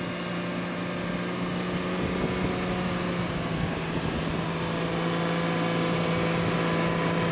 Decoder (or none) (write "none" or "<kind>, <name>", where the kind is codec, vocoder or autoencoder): none